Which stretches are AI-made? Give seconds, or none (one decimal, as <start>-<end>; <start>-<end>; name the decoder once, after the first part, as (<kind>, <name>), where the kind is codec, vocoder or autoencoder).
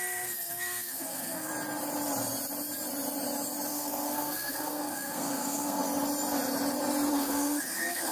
0.0-1.5 (codec, SNAC); 3.7-5.8; 7.1-8.1